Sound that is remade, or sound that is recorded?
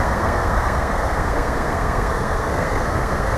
remade